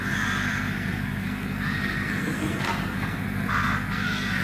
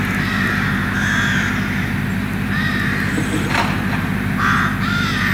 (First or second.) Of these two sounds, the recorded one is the second